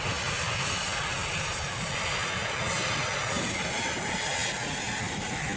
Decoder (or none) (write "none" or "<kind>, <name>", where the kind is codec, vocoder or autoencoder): none